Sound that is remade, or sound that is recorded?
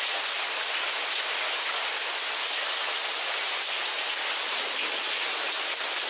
recorded